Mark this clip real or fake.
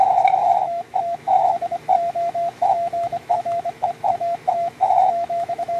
fake